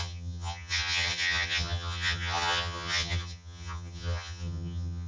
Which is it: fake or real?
fake